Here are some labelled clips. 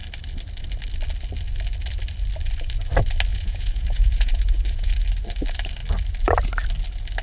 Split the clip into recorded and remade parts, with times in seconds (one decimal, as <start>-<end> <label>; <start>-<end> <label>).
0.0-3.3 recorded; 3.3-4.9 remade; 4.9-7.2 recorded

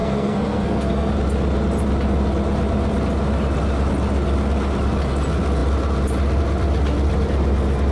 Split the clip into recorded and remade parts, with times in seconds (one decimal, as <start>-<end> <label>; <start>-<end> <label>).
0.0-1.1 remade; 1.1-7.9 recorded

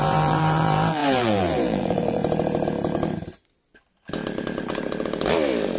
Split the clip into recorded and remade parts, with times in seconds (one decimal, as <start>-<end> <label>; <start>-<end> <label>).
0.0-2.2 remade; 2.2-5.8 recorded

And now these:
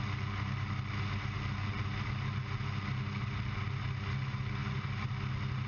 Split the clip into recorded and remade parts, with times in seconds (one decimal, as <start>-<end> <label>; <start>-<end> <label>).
0.0-5.7 recorded

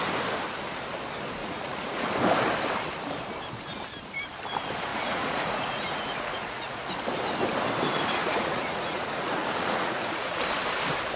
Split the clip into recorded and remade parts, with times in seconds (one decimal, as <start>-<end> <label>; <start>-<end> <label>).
0.0-1.4 recorded; 1.4-2.1 remade; 2.1-4.9 recorded; 4.9-6.8 remade; 6.8-8.2 recorded; 8.2-10.4 remade; 10.4-11.2 recorded

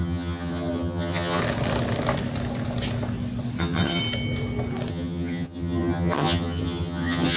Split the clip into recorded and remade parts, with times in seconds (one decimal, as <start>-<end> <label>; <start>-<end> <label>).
0.0-1.4 remade; 1.4-3.6 recorded; 3.6-4.0 remade; 4.0-4.9 recorded; 4.9-7.4 remade

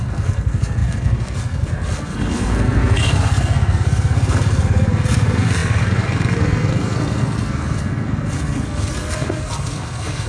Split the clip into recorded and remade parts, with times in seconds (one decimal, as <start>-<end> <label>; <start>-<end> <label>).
0.0-10.3 remade

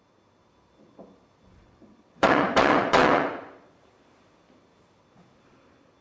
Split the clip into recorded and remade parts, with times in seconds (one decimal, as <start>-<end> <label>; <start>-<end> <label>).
0.0-1.6 recorded; 1.6-3.4 remade; 3.4-6.0 recorded